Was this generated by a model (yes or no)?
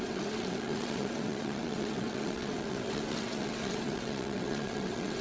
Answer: yes